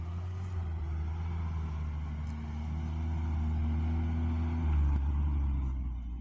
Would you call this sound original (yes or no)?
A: yes